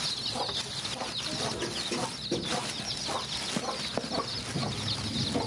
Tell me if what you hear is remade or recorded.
recorded